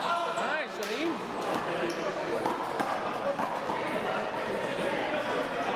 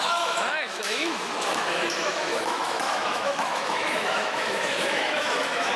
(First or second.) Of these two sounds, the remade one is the second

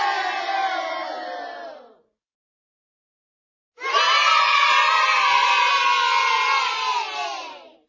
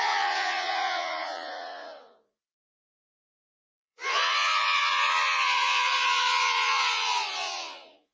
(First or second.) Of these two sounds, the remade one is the second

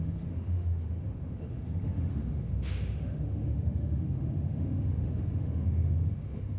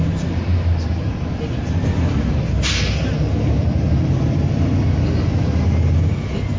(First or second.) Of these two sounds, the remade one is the first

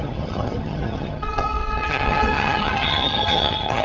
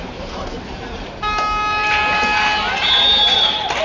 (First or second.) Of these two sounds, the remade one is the first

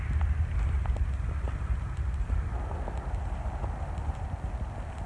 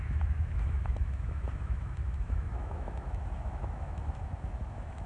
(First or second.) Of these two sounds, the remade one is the second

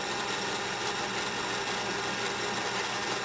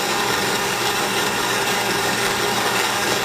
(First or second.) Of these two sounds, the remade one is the second